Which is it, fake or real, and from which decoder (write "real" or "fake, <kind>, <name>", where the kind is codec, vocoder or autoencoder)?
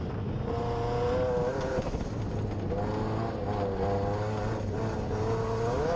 real